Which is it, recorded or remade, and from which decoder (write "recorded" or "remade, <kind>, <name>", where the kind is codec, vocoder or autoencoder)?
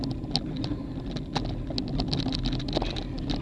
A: recorded